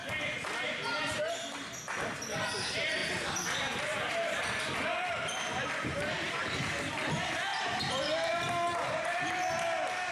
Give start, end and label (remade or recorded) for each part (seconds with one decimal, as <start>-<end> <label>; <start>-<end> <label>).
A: 0.0-1.3 remade; 1.3-3.0 recorded; 3.0-6.6 remade; 6.6-7.5 recorded; 7.5-9.2 remade; 9.2-10.1 recorded